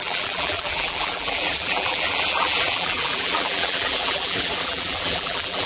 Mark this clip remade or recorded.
remade